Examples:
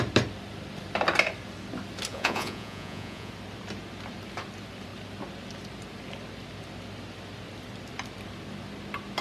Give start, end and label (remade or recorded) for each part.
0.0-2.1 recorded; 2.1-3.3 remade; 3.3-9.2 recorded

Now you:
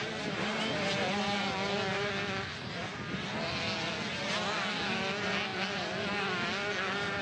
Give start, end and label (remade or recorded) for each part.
0.0-7.2 recorded

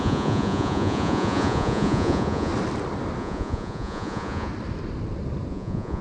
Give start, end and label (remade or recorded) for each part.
0.0-2.5 remade; 2.5-3.2 recorded; 3.2-4.5 remade; 4.5-5.5 recorded; 5.5-6.0 remade

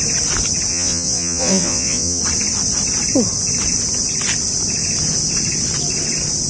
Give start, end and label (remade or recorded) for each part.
0.0-0.7 recorded; 0.7-2.2 remade; 2.2-6.5 recorded

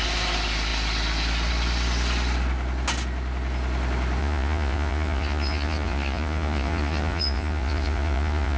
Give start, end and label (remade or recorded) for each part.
0.0-4.2 recorded; 4.2-8.6 remade